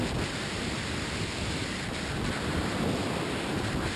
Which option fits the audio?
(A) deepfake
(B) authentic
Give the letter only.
A